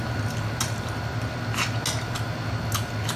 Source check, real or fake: real